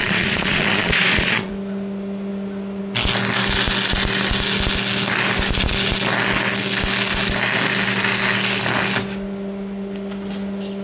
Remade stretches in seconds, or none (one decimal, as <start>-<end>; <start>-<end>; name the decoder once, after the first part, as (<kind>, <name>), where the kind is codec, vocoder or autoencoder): 0.0-1.5 (vocoder, Vocos)